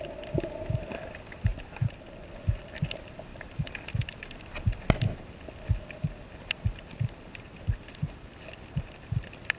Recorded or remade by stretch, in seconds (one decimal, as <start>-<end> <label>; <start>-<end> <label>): 0.0-1.5 recorded; 1.5-2.0 remade; 2.0-3.3 recorded; 3.3-4.4 remade; 4.4-9.6 recorded

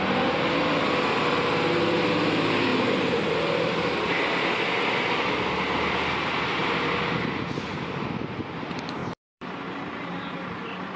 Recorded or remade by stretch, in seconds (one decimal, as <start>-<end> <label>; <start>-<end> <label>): 0.0-2.7 recorded; 2.7-3.3 remade; 3.3-9.0 recorded; 9.0-10.1 remade; 10.1-11.0 recorded